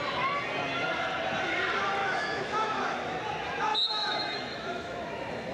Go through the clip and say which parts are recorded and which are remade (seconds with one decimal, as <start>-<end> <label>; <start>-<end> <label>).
0.0-2.0 recorded; 2.0-3.2 remade; 3.2-3.7 recorded; 3.7-5.1 remade; 5.1-5.5 recorded